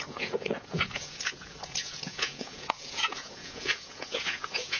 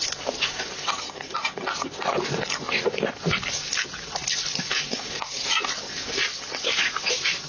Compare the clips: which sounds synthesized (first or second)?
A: first